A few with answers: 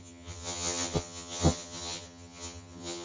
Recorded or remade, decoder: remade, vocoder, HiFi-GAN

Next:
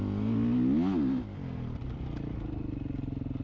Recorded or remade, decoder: recorded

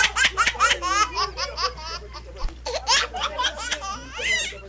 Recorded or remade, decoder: recorded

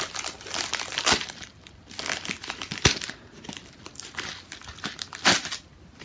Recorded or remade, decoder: recorded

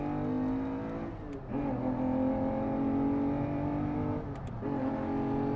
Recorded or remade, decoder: recorded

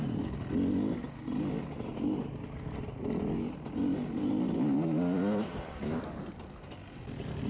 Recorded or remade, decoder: recorded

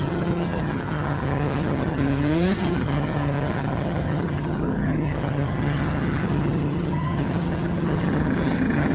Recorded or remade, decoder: remade, vocoder, HiFi-GAN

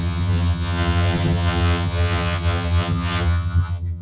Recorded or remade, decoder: remade, vocoder, HiFi-GAN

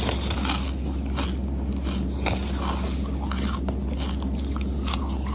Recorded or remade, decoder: recorded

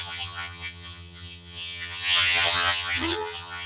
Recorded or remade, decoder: remade, vocoder, HiFi-GAN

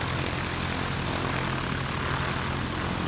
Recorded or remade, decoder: recorded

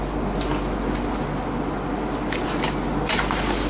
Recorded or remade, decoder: recorded